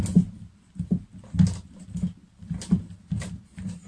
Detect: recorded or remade recorded